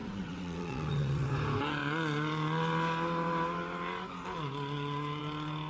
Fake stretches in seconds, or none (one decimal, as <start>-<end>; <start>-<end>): 0.0-1.3